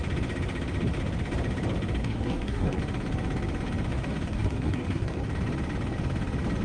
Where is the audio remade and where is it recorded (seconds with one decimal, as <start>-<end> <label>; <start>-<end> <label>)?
0.0-2.0 recorded; 2.0-2.8 remade; 2.8-3.9 recorded; 3.9-5.2 remade; 5.2-6.6 recorded